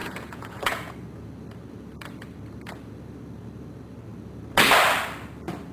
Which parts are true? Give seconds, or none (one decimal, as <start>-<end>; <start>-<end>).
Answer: 0.9-5.7